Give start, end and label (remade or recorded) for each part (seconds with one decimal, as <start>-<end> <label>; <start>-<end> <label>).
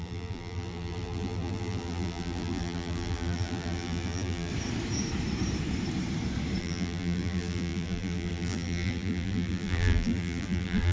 0.0-4.5 remade; 4.5-6.6 recorded; 6.6-10.9 remade